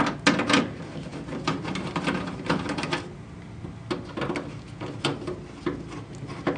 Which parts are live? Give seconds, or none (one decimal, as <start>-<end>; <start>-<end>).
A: 0.0-6.6